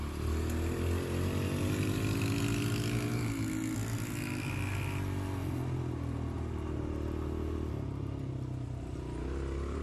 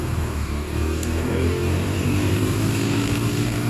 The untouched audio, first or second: first